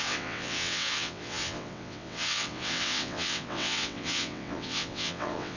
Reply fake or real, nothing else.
fake